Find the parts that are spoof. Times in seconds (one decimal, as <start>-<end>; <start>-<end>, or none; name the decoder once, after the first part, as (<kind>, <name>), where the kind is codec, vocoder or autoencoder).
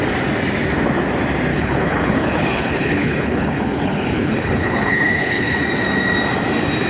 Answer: 1.5-5.6 (codec, HILCodec)